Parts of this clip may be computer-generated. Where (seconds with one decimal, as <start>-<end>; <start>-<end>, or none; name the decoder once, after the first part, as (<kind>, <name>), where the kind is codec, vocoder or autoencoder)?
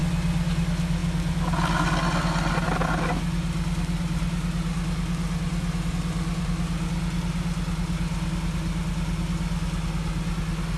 none